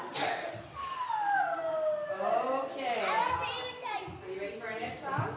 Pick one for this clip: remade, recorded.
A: recorded